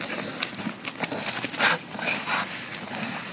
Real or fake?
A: real